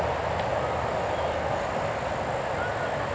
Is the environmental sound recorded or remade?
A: recorded